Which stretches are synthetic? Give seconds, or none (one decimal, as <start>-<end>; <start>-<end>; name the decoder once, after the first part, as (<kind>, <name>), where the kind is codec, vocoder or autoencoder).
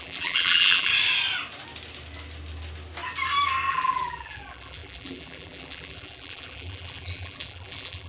0.0-0.9 (vocoder, BigVGAN v2); 3.7-8.1